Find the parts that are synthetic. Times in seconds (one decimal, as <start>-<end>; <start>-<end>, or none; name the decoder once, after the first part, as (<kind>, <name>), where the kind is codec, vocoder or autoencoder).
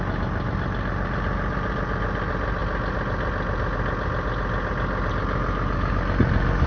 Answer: none